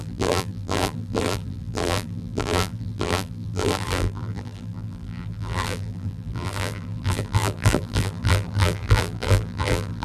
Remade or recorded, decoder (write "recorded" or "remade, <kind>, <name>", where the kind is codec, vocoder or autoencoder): remade, vocoder, BigVGAN v2